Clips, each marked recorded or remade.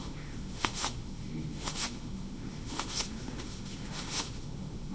remade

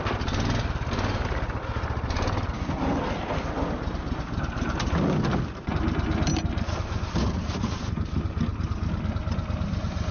recorded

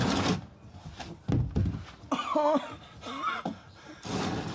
recorded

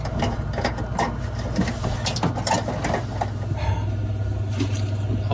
recorded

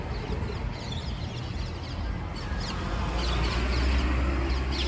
recorded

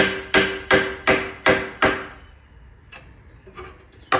recorded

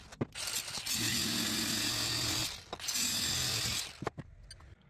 recorded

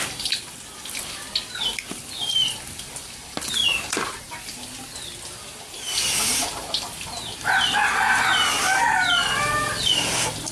recorded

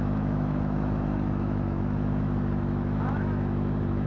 remade